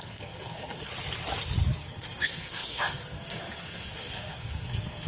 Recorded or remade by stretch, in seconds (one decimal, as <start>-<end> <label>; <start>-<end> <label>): 0.0-0.9 remade; 0.9-1.8 recorded; 1.8-5.1 remade